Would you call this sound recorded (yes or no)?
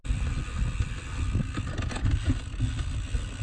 yes